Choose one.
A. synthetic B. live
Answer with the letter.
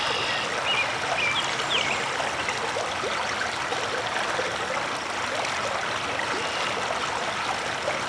B